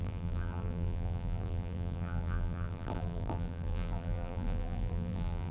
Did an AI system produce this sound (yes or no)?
yes